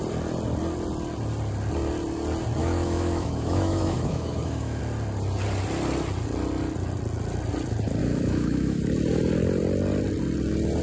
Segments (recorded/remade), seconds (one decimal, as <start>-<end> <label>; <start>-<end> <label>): 0.0-2.6 recorded; 2.6-4.8 remade; 4.8-8.0 recorded; 8.0-8.8 remade; 8.8-10.8 recorded